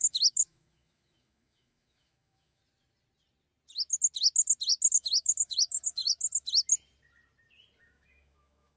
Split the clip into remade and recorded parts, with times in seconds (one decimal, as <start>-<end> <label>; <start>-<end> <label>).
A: 0.0-2.6 remade; 2.6-4.9 recorded; 4.9-6.0 remade; 6.0-7.8 recorded; 7.8-8.8 remade